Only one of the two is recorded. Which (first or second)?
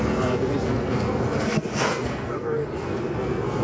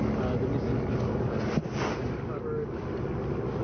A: second